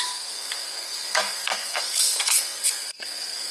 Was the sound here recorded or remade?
remade